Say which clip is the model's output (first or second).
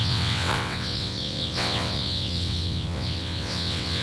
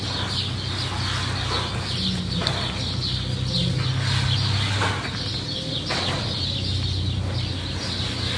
first